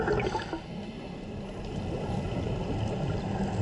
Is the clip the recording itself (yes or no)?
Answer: yes